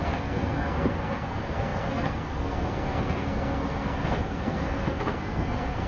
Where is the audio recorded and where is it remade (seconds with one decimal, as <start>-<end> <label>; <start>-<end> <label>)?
0.0-5.9 remade